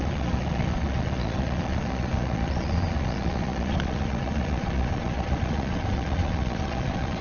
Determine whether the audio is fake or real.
fake